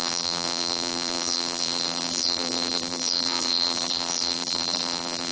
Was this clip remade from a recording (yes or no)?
yes